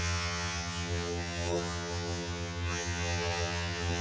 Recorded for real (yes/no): no